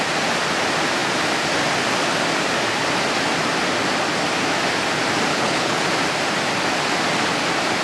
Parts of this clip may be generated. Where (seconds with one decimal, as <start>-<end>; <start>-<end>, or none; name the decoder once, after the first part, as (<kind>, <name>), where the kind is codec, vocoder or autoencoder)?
5.3-5.8 (codec, HILCodec)